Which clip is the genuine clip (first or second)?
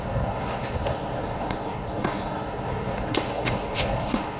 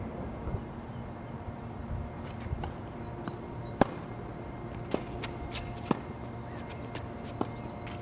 second